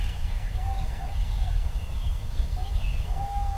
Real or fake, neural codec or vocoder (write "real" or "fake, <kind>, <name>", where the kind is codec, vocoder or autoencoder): fake, codec, SNAC